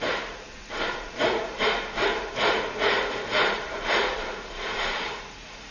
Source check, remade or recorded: remade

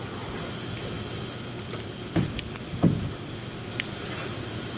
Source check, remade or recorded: recorded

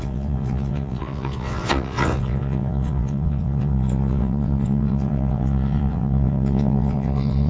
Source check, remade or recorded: remade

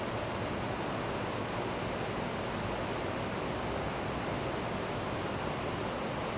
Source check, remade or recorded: recorded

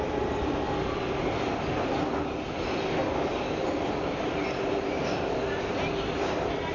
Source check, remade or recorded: recorded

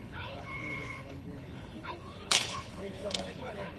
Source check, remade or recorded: remade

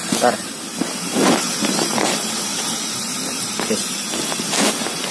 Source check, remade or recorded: recorded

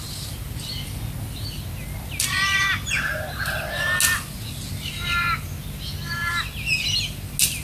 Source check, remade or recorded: recorded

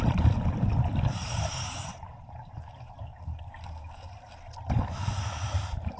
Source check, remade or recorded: recorded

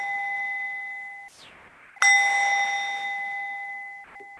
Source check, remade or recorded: recorded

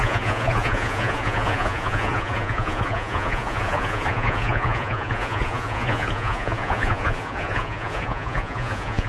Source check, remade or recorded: remade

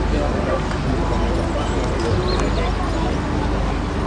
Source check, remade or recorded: recorded